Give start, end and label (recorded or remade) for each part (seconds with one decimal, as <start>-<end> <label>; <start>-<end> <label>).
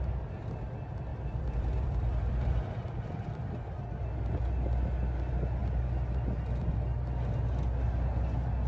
0.0-1.1 recorded; 1.1-3.8 remade; 3.8-5.6 recorded; 5.6-6.7 remade; 6.7-8.7 recorded